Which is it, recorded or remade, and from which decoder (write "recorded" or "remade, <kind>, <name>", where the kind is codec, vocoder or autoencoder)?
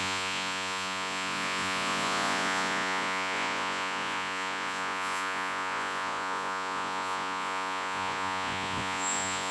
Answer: remade, vocoder, Vocos